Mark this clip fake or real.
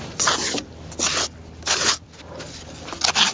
real